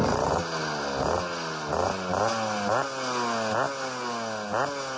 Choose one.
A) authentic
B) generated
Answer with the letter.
A